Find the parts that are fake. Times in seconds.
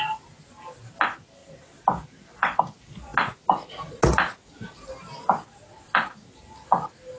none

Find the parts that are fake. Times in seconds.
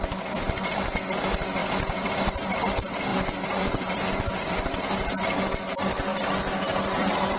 1.6-2.7 (vocoder, BigVGAN v2); 3.1-4.8; 6.1-7.4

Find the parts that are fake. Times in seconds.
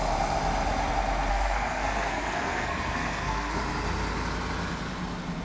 1.3-3.6 (codec, SNAC)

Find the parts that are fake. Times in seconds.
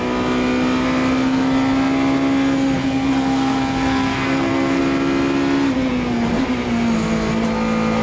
2.8-4.8 (codec, SNAC)